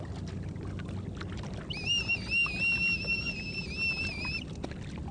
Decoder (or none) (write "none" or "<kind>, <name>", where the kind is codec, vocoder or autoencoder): none